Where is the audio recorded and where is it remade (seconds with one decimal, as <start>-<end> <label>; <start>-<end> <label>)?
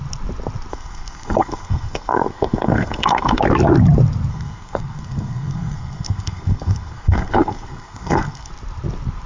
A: 0.0-0.7 recorded; 0.7-3.4 remade; 3.4-4.3 recorded; 4.3-8.5 remade; 8.5-9.3 recorded